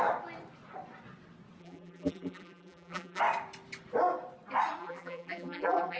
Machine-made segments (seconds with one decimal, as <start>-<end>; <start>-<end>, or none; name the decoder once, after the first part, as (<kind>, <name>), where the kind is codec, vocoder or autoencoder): 1.6-3.2 (vocoder, BigVGAN v2); 4.8-6.0